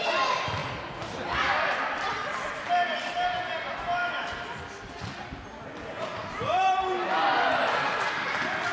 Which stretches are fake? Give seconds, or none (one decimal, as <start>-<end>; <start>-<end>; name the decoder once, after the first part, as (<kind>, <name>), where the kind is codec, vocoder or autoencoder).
none

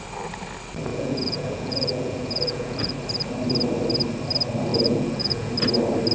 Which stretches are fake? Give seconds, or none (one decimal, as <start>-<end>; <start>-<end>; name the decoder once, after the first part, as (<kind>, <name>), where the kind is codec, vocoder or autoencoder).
0.9-2.9 (vocoder, Vocos); 4.7-5.5